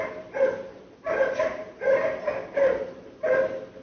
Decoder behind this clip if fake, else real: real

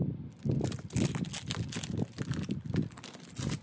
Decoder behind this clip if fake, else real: real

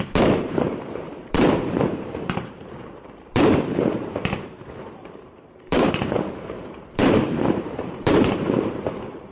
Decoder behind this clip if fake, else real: fake, vocoder, BigVGAN v2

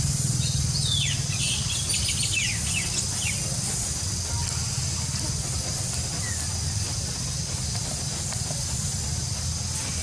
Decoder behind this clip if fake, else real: real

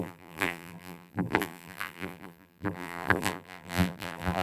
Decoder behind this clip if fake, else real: fake, vocoder, BigVGAN v2